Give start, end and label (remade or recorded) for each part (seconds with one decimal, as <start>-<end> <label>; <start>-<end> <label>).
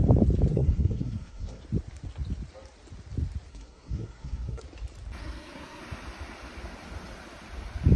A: 0.0-0.5 recorded; 0.5-1.6 remade; 1.6-3.5 recorded; 3.5-4.6 remade; 4.6-5.2 recorded; 5.2-5.8 remade; 5.8-8.0 recorded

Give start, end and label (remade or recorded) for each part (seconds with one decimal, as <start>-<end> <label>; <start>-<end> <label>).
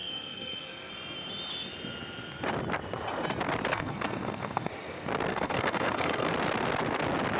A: 0.0-0.9 remade; 0.9-3.7 recorded; 3.7-4.7 remade; 4.7-5.3 recorded; 5.3-6.3 remade; 6.3-7.4 recorded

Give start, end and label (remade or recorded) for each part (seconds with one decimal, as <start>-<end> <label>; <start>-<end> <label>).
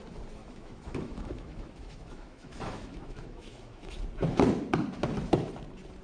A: 0.0-0.4 recorded; 0.4-4.0 remade; 4.0-6.0 recorded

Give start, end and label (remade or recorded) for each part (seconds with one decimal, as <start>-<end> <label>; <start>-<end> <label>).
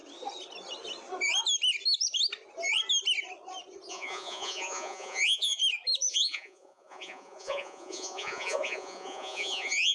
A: 0.0-3.9 recorded; 3.9-5.6 remade; 5.6-6.1 recorded; 6.1-9.9 remade